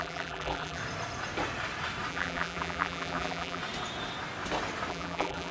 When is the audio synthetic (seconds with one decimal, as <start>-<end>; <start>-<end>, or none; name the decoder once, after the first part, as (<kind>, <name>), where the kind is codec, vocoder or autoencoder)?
0.0-0.8 (vocoder, BigVGAN v2); 2.1-3.6; 4.9-5.5